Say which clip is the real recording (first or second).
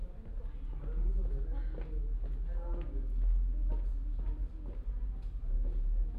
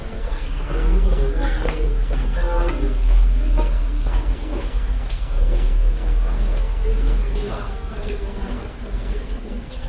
first